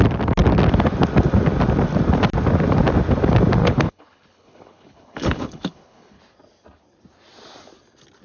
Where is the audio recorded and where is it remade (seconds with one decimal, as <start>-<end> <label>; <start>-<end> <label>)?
0.0-3.6 recorded; 3.6-6.2 remade; 6.2-8.2 recorded